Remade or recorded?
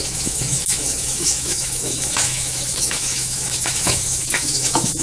remade